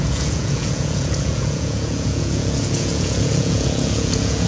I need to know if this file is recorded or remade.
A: remade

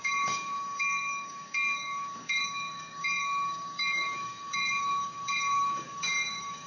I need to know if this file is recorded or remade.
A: remade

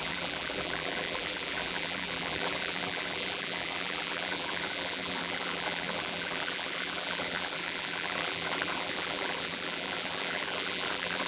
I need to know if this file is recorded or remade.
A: remade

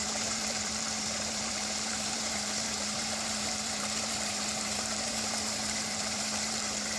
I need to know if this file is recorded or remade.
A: remade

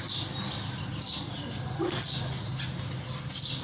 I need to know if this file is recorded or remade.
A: recorded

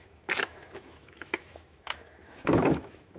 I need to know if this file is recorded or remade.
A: remade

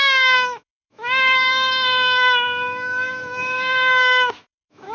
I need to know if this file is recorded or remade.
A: remade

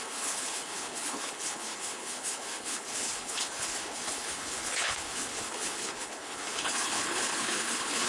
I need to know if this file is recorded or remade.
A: remade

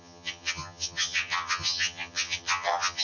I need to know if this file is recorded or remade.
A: remade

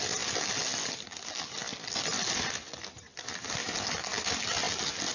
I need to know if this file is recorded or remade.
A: recorded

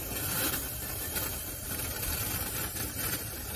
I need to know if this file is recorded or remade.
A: remade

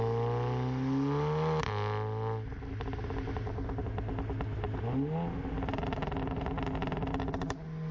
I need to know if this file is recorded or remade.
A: recorded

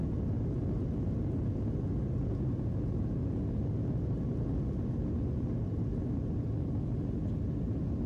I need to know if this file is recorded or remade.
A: recorded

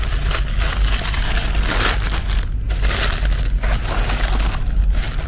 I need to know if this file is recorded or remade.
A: recorded